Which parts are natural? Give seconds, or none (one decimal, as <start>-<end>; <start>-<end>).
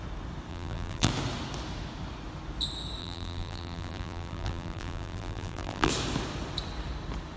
0.0-0.5; 1.1-3.0; 5.9-7.4